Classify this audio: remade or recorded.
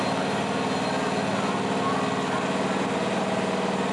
recorded